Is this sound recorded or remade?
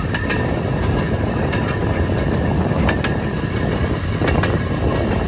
recorded